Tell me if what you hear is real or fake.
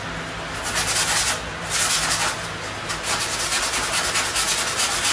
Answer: real